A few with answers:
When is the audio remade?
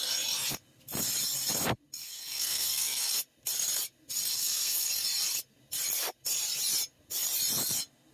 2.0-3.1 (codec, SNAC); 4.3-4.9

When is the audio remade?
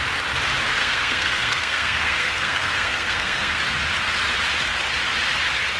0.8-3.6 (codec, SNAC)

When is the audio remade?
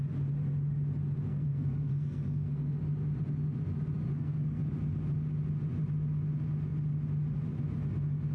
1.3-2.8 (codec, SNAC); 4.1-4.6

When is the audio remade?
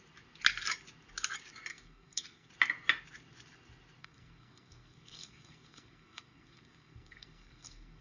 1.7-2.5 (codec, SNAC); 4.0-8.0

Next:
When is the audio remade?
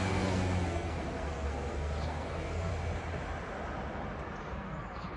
0.0-2.7 (codec, SNAC); 4.4-5.2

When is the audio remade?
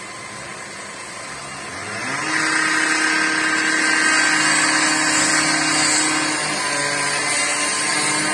none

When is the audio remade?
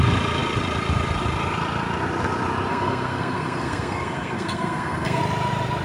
2.7-5.2 (codec, SNAC)